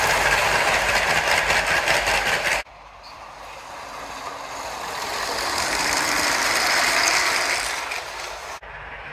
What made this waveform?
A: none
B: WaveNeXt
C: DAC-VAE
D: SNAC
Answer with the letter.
A